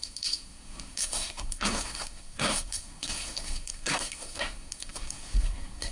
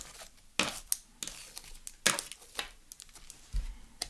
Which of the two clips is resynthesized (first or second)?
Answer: first